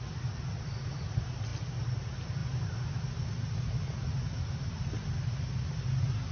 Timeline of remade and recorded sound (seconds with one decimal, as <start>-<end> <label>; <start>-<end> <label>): 0.0-1.5 recorded; 1.5-2.0 remade; 2.0-6.3 recorded